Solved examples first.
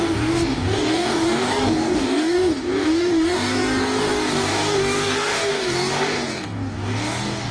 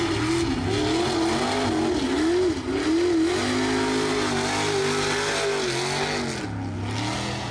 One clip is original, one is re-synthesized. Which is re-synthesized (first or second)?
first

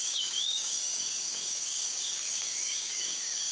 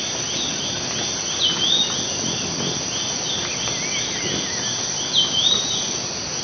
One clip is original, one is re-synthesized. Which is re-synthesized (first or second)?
first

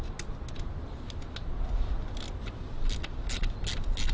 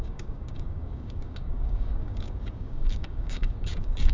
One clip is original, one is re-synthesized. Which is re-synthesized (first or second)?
second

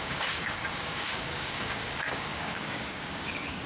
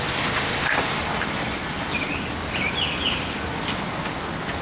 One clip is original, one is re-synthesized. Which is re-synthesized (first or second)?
first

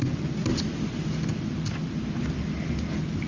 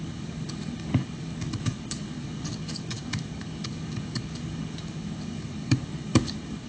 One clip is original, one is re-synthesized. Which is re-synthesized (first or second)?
second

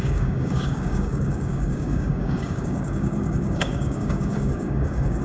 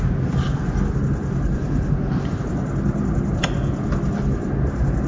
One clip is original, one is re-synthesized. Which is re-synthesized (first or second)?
first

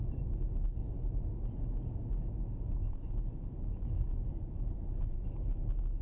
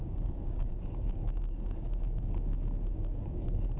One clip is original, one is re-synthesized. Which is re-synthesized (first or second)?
second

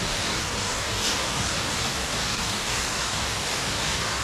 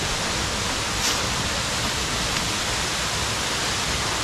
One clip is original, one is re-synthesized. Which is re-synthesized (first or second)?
first